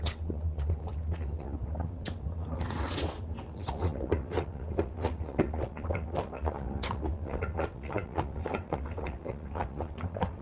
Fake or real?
fake